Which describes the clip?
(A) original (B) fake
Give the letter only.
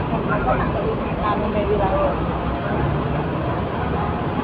A